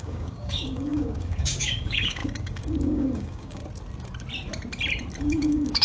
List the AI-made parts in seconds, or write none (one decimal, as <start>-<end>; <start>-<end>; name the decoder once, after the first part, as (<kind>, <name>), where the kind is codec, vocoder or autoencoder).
0.0-3.6 (codec, DAC); 5.2-5.8